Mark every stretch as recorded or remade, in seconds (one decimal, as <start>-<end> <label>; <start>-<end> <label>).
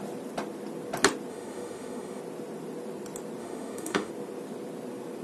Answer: 0.0-1.3 recorded; 1.3-2.2 remade; 2.2-3.4 recorded; 3.4-4.1 remade; 4.1-5.2 recorded